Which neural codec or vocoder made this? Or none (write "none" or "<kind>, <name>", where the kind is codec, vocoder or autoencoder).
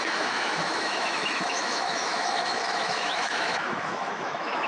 autoencoder, DAC-VAE